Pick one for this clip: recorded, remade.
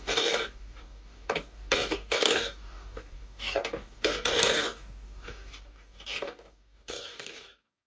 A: remade